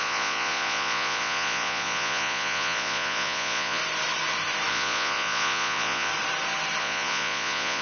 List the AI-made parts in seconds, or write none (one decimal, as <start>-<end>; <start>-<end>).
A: 0.0-3.8; 4.7-6.1; 6.8-7.8

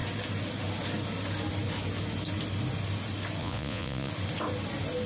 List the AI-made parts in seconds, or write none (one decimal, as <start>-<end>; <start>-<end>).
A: 3.4-4.1